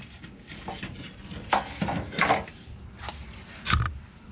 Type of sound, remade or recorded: recorded